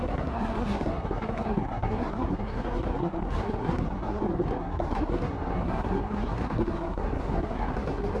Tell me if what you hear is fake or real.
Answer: fake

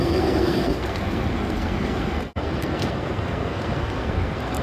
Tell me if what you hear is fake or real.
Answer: fake